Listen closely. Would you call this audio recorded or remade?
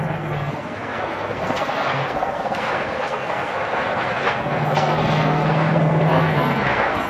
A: remade